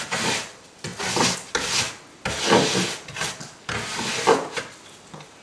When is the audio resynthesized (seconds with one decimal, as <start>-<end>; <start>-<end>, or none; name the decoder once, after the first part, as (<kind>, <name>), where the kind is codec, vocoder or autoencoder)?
none